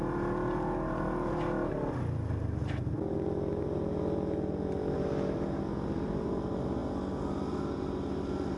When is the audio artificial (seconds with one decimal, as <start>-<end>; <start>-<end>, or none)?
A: none